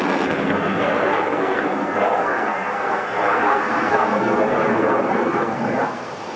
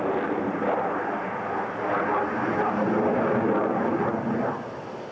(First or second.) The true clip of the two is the second